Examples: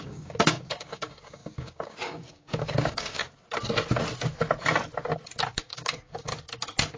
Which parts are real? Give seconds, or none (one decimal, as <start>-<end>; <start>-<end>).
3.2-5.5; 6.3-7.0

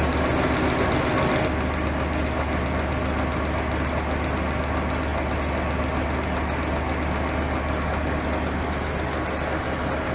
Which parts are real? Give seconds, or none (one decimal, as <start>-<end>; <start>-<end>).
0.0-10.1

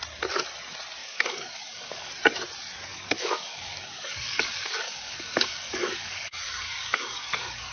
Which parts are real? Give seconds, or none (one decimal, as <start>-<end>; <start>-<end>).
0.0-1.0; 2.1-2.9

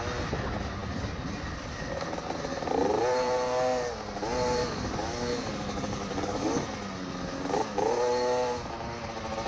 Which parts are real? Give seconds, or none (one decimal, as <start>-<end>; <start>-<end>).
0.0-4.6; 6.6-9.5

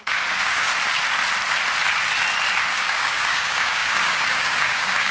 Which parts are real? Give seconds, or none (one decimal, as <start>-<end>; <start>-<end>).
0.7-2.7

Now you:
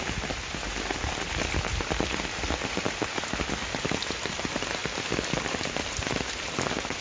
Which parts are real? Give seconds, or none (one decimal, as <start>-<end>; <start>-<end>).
0.0-7.0